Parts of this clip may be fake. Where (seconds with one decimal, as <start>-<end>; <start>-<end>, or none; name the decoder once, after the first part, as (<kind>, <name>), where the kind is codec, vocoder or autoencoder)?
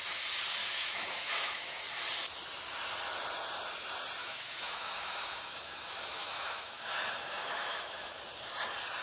0.6-1.8 (autoencoder, DAC-VAE); 4.2-8.2